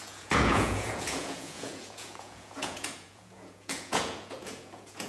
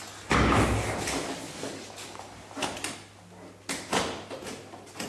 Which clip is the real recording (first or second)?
second